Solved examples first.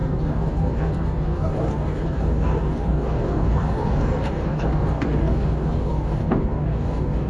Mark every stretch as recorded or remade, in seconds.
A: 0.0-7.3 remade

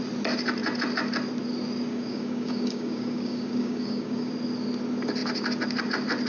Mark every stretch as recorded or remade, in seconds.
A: 0.0-1.9 recorded; 1.9-4.3 remade; 4.3-6.3 recorded

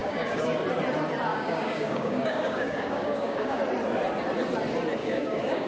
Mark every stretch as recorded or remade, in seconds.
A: 0.0-0.5 remade; 0.5-1.3 recorded; 1.3-3.6 remade; 3.6-5.0 recorded; 5.0-5.7 remade

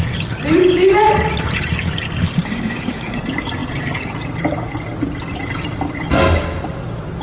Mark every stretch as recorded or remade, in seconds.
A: 0.0-0.6 recorded; 0.6-1.1 remade; 1.1-2.2 recorded; 2.2-3.2 remade; 3.2-7.2 recorded

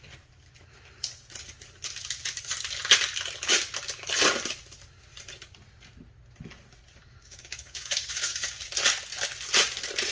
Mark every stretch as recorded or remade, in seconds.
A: 0.0-7.0 recorded; 7.0-8.7 remade; 8.7-10.1 recorded

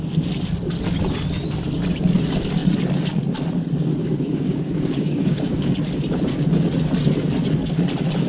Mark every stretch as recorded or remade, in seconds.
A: 0.0-4.0 recorded; 4.0-5.7 remade; 5.7-8.3 recorded

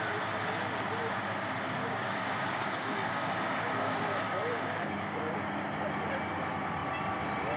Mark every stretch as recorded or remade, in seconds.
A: 0.0-1.8 recorded; 1.8-5.4 remade; 5.4-7.6 recorded